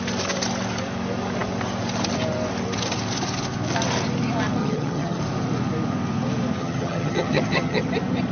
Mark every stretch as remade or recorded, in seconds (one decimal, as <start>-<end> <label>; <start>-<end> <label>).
0.0-4.6 recorded; 4.6-5.2 remade; 5.2-6.6 recorded; 6.6-7.9 remade; 7.9-8.3 recorded

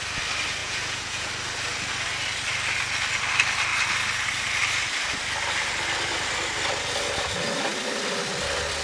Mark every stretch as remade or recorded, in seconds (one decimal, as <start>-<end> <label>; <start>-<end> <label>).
0.0-0.6 recorded; 0.6-1.3 remade; 1.3-8.8 recorded

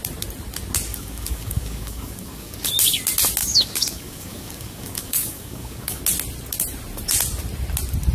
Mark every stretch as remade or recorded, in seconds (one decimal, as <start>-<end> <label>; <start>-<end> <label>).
0.0-0.9 recorded; 0.9-2.7 remade; 2.7-3.4 recorded; 3.4-6.0 remade; 6.0-8.1 recorded

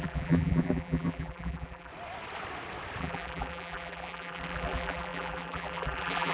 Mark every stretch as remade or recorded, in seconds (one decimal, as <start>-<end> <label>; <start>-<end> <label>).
0.0-1.9 remade; 1.9-3.0 recorded; 3.0-6.3 remade

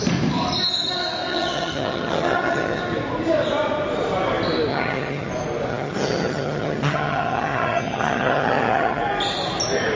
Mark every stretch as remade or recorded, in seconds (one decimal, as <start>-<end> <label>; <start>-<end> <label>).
0.0-1.3 recorded; 1.3-2.8 remade; 2.8-4.7 recorded; 4.7-5.3 remade; 5.3-5.7 recorded; 5.7-9.0 remade; 9.0-10.0 recorded

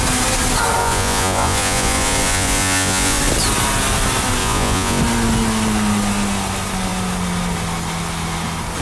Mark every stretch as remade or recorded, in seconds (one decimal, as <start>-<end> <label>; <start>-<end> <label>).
0.0-0.8 recorded; 0.8-3.2 remade; 3.2-4.4 recorded; 4.4-5.0 remade; 5.0-8.8 recorded

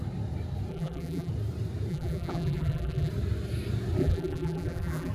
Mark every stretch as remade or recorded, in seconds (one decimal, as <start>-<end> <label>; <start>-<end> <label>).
0.0-0.7 recorded; 0.7-1.3 remade; 1.3-1.9 recorded; 1.9-3.1 remade; 3.1-4.0 recorded; 4.0-5.1 remade

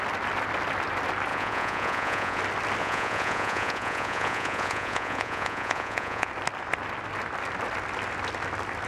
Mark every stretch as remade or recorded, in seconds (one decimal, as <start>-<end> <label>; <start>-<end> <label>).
0.0-1.3 recorded; 1.3-2.4 remade; 2.4-2.8 recorded; 2.8-6.3 remade; 6.3-8.9 recorded